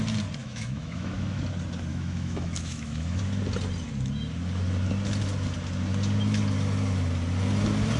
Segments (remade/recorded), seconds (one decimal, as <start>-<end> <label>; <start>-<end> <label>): 0.0-0.4 recorded; 0.4-1.4 remade; 1.4-1.9 recorded; 1.9-3.2 remade; 3.2-8.0 recorded